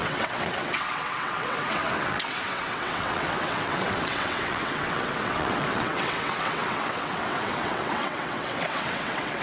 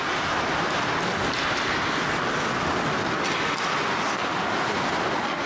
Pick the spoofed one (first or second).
first